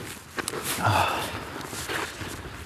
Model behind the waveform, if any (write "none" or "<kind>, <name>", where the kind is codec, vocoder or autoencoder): none